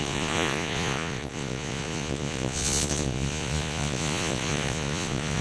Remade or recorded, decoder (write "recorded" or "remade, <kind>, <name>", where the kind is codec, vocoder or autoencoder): remade, vocoder, Vocos